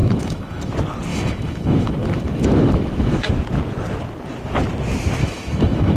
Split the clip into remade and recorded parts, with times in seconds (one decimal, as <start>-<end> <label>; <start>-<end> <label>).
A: 0.0-0.7 remade; 0.7-1.1 recorded; 1.1-3.3 remade; 3.3-5.2 recorded; 5.2-6.0 remade